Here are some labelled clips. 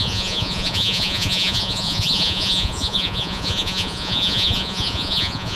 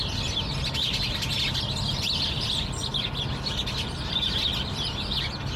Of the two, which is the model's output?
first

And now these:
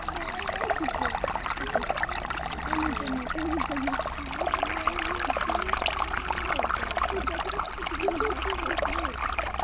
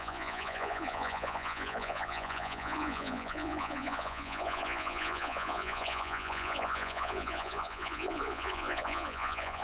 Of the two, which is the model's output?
second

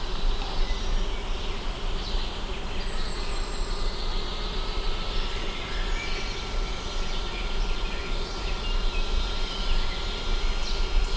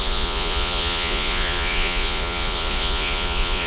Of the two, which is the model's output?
second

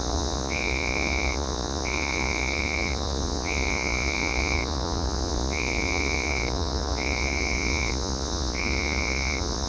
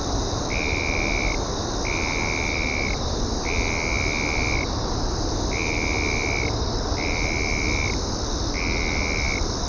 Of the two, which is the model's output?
first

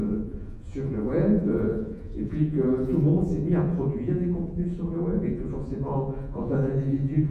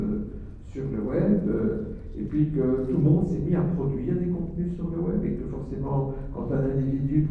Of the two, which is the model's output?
first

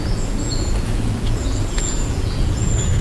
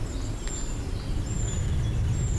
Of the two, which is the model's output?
first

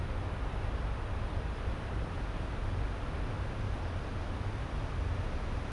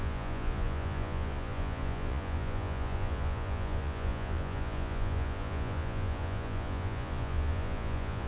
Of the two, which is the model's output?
second